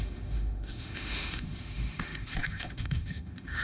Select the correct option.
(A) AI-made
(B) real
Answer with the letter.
A